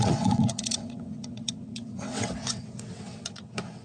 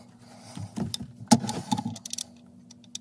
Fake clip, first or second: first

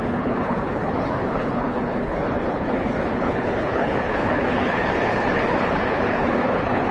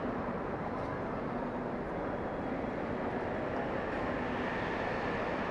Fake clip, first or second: first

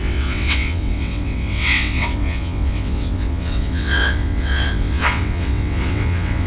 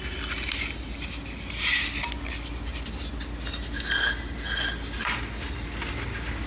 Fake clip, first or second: first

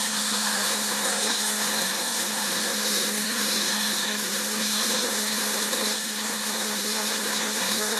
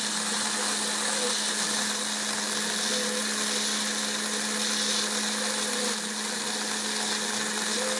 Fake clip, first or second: first